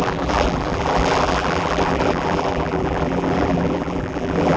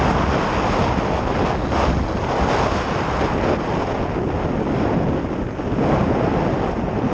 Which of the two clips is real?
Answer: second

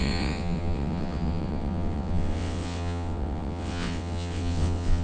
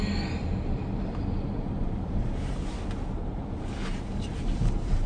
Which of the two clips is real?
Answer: second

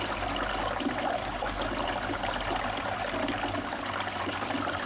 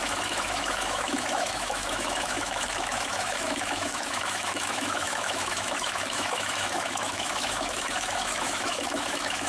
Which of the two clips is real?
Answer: first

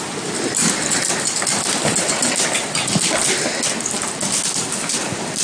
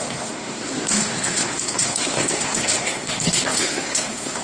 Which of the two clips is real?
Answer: first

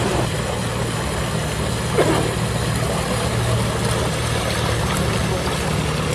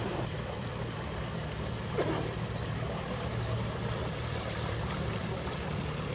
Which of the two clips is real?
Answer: first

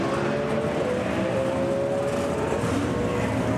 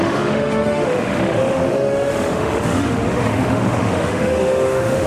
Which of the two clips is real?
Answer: first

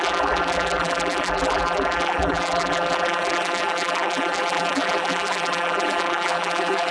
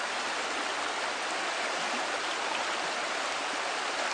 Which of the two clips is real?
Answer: second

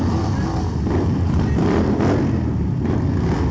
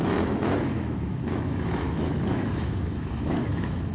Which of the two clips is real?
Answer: first